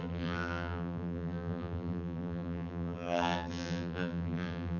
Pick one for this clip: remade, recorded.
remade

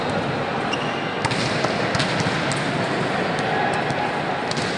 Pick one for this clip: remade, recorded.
recorded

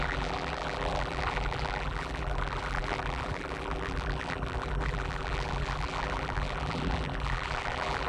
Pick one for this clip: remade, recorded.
remade